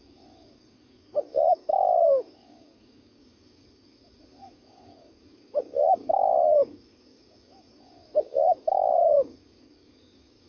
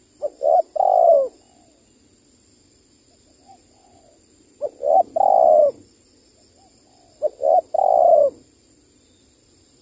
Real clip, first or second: second